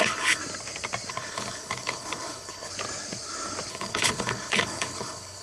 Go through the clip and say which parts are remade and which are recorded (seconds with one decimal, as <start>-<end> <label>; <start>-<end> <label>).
0.0-0.4 remade; 0.4-1.1 recorded; 1.1-2.7 remade; 2.7-3.7 recorded; 3.7-5.4 remade